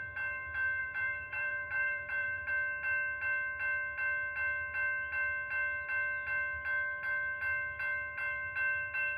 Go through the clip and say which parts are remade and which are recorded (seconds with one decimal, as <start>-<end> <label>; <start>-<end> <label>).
0.0-0.8 recorded; 0.8-2.5 remade; 2.5-9.2 recorded